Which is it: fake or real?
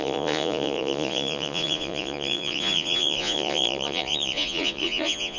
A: fake